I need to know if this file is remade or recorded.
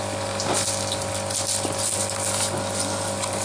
recorded